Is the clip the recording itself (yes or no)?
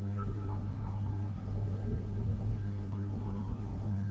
no